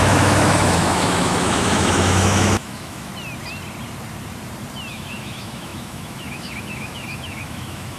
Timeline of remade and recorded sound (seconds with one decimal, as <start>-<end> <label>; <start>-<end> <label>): 0.0-3.1 remade; 3.1-4.9 recorded; 4.9-8.0 remade